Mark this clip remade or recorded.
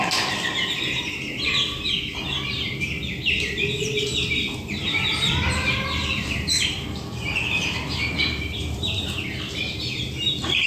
remade